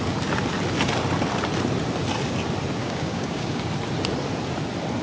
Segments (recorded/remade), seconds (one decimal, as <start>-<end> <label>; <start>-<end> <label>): 0.0-2.8 recorded; 2.8-3.6 remade; 3.6-5.0 recorded